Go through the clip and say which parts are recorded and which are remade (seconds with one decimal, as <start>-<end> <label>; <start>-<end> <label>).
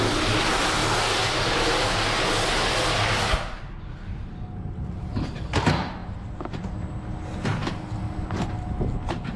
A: 0.0-9.4 recorded